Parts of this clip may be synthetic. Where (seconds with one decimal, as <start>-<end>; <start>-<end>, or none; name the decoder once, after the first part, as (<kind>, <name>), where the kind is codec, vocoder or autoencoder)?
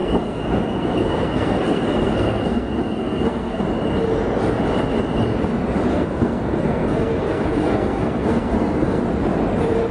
0.0-3.6 (codec, SNAC); 5.9-9.0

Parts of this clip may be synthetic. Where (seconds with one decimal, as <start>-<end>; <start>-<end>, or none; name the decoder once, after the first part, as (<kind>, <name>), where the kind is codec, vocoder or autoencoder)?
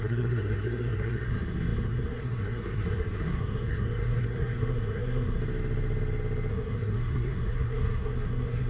0.0-5.4 (codec, SNAC); 6.5-8.7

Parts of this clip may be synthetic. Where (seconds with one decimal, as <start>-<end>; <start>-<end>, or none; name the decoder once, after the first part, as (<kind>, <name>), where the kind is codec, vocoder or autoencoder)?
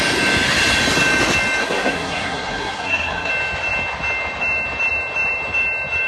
1.6-3.3 (codec, SNAC)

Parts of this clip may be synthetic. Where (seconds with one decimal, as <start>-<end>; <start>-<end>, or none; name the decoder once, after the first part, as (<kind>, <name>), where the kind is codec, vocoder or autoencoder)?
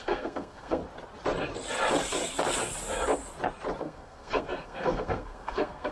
0.0-0.8 (codec, SNAC); 3.8-5.9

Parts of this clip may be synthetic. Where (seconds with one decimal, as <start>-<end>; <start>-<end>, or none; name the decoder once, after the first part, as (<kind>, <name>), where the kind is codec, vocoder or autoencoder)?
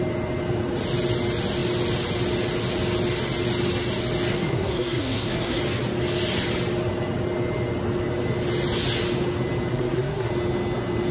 4.3-5.6 (codec, SNAC); 9.7-10.3